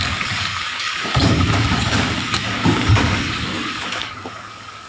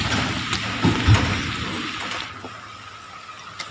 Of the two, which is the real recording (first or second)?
second